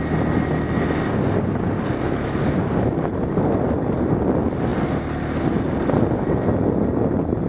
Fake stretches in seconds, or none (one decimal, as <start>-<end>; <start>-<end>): none